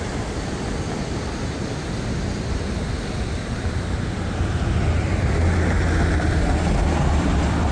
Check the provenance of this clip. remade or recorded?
recorded